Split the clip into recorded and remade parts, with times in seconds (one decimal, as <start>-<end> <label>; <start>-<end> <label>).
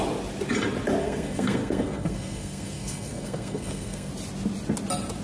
0.0-1.0 recorded; 1.0-4.1 remade; 4.1-5.2 recorded